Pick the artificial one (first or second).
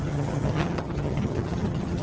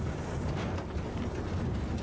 first